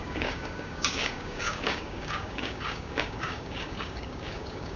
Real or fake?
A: fake